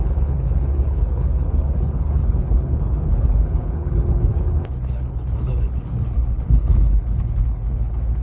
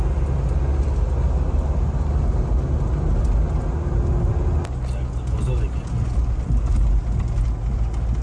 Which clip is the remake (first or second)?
first